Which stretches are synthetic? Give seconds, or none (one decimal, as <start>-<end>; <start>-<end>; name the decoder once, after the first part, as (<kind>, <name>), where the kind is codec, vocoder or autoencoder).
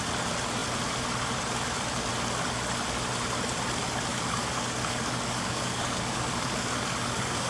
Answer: 4.1-7.5 (codec, DAC)